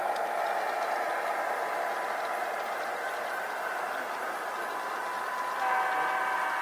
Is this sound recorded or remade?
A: recorded